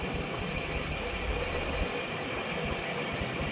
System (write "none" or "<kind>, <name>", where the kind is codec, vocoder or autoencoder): none